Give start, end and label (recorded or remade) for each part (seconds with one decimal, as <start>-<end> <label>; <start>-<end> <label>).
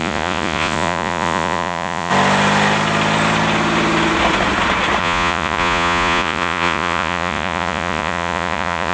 0.0-2.1 remade; 2.1-5.0 recorded; 5.0-8.9 remade